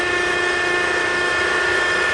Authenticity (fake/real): fake